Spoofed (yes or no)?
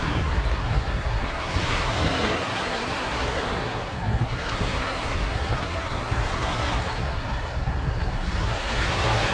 yes